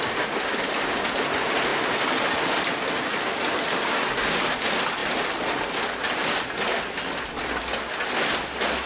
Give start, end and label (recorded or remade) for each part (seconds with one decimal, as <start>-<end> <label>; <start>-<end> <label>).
0.0-8.9 recorded